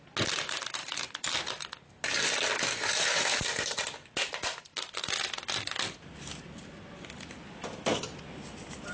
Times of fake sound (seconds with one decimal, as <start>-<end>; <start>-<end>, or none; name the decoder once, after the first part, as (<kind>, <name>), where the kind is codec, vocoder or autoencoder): 0.8-1.4 (vocoder, BigVGAN v2)